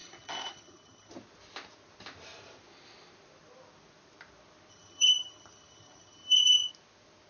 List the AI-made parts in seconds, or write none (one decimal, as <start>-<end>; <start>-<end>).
0.0-1.1; 4.7-6.7

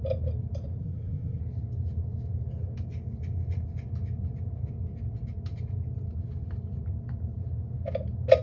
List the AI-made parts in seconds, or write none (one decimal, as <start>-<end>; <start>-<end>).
0.8-1.4

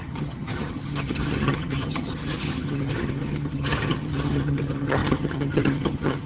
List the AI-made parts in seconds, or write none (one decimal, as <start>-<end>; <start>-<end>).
0.0-6.3